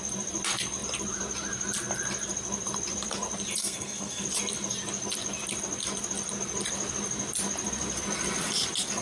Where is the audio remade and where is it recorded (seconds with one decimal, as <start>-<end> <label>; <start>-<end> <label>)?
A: 0.0-3.6 recorded; 3.6-4.2 remade; 4.2-9.0 recorded